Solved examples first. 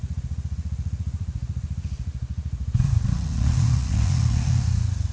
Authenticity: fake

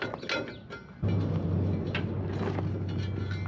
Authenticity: real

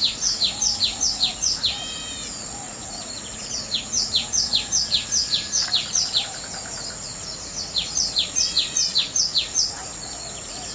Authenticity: fake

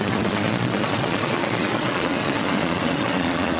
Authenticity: fake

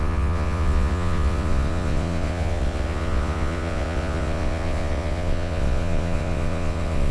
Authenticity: fake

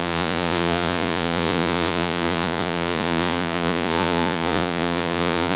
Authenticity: fake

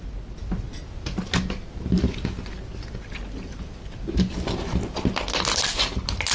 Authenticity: real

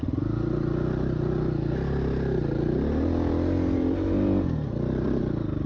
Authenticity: real